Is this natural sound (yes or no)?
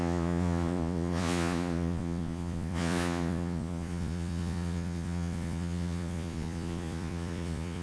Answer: no